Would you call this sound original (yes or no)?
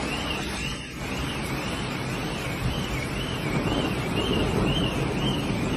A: yes